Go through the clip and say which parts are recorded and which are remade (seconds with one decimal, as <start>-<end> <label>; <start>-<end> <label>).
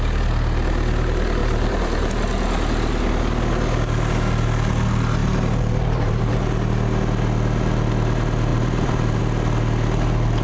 0.0-1.4 recorded; 1.4-2.1 remade; 2.1-5.2 recorded; 5.2-6.4 remade; 6.4-8.5 recorded; 8.5-9.2 remade; 9.2-10.4 recorded